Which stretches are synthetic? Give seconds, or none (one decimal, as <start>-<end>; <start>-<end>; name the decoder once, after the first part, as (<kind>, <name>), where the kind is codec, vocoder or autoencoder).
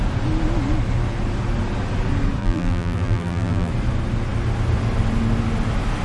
2.4-3.7 (vocoder, BigVGAN v2)